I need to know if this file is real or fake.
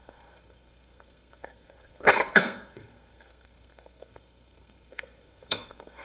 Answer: fake